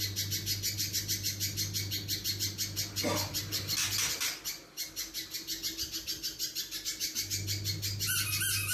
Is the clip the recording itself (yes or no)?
yes